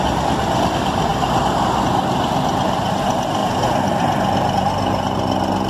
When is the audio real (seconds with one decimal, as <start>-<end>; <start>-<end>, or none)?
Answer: 0.0-5.7